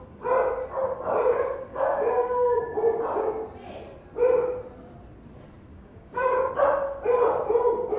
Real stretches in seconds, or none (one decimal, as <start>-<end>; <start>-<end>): 0.0-1.7; 2.6-5.7; 6.5-8.0